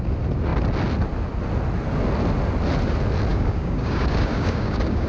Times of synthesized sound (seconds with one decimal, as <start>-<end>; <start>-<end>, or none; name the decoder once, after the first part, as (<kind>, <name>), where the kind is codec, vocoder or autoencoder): 3.3-5.1 (codec, DAC)